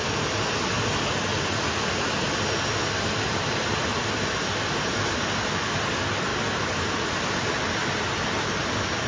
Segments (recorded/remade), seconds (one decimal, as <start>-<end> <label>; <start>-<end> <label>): 0.0-1.3 recorded; 1.3-2.1 remade; 2.1-9.1 recorded